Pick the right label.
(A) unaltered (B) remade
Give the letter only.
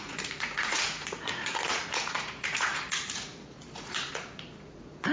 B